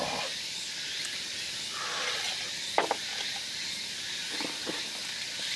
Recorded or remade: recorded